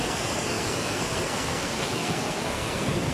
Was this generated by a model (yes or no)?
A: yes